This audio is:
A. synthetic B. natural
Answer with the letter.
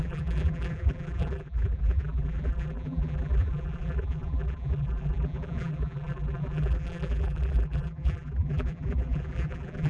A